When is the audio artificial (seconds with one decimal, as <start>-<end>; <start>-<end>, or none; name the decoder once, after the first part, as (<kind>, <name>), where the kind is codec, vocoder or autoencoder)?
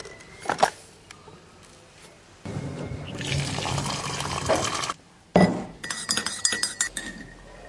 none